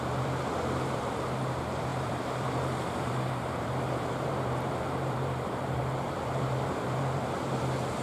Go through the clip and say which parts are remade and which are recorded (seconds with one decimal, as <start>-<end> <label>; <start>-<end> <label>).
0.0-8.0 remade